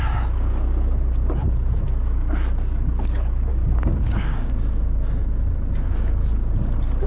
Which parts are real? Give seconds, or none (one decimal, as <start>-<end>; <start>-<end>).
0.0-3.5; 4.5-7.1

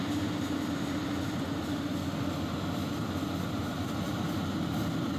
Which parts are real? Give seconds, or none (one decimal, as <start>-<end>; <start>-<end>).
0.0-5.2

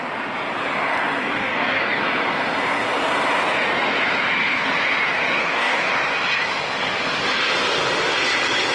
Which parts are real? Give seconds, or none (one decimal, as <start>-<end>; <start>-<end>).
0.0-1.2; 2.0-5.4; 5.9-8.7

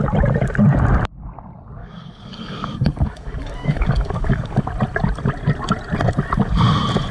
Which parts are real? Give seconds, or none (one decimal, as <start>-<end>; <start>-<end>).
0.0-1.8; 4.6-7.1